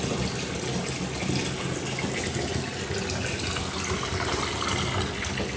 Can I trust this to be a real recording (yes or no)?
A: yes